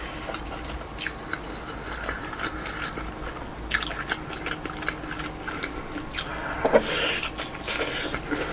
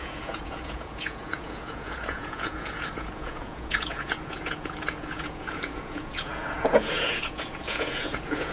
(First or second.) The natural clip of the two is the first